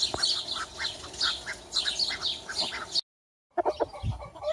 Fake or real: real